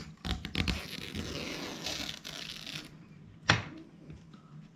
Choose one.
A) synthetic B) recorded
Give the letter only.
B